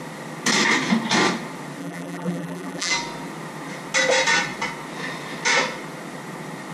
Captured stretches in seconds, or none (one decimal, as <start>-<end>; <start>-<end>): 0.0-1.8; 2.9-6.7